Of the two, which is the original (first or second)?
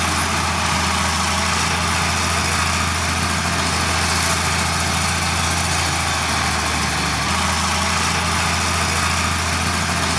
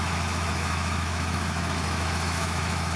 first